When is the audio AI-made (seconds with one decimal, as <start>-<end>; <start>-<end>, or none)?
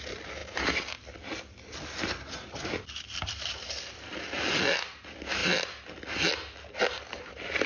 0.0-5.4; 6.8-7.7